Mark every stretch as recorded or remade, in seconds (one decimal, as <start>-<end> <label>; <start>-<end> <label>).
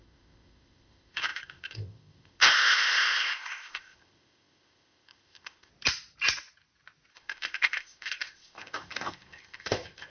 0.0-5.7 remade; 5.7-7.1 recorded; 7.1-10.1 remade